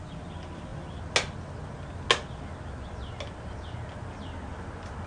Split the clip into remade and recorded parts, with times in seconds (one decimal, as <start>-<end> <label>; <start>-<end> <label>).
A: 0.0-5.1 recorded